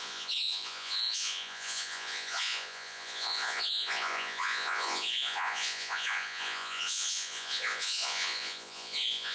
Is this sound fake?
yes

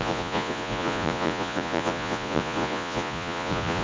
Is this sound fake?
yes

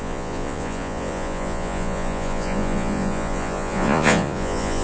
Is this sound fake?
yes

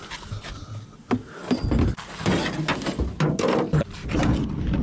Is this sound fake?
no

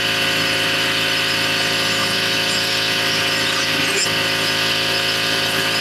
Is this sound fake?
no